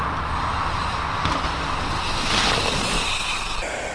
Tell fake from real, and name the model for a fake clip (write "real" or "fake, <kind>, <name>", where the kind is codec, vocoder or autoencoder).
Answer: real